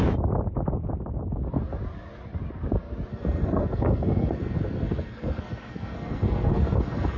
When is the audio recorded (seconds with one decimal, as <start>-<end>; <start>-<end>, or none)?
0.0-3.1

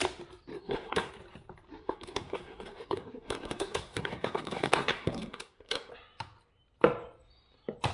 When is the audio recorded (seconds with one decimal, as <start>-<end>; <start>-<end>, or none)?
0.0-0.5; 1.1-1.7; 5.9-7.9

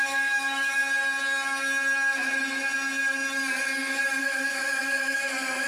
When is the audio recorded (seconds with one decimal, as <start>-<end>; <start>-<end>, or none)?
0.8-4.2

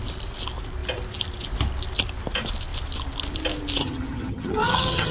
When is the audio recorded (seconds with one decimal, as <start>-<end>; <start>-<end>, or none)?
0.0-3.8

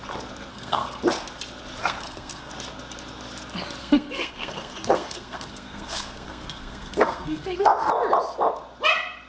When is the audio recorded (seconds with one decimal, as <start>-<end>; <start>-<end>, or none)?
0.0-0.5; 1.0-1.8; 2.5-3.8; 7.9-9.3

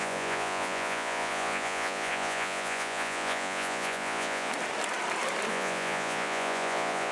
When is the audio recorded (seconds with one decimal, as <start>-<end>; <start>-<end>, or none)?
4.5-5.5